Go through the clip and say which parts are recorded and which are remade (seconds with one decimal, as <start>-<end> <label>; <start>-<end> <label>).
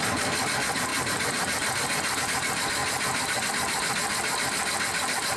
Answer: 0.0-5.4 remade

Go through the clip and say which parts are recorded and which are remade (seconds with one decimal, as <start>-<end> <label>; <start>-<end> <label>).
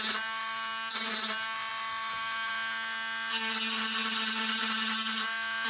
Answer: 0.0-5.7 recorded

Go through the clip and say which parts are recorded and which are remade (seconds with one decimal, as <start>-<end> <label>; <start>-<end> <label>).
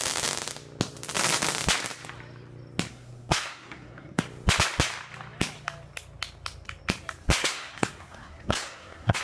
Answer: 0.0-2.9 recorded; 2.9-4.2 remade; 4.2-7.4 recorded; 7.4-9.2 remade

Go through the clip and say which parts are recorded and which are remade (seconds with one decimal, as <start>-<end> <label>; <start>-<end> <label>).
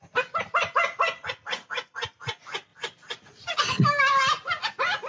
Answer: 0.0-5.1 recorded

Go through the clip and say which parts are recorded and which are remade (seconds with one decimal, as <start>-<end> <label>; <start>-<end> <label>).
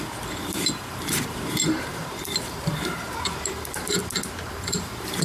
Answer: 0.0-4.0 remade; 4.0-4.5 recorded; 4.5-5.2 remade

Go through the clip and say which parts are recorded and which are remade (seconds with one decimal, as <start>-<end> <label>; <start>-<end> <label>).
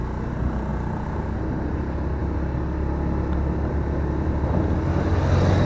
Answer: 0.0-5.7 recorded